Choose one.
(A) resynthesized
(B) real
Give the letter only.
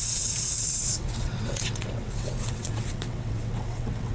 A